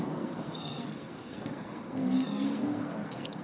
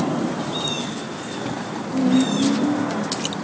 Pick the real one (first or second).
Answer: second